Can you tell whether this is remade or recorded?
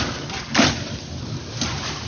recorded